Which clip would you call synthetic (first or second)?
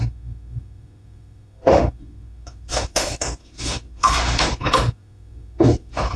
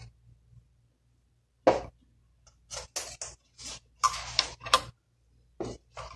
first